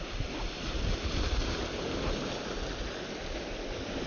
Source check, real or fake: real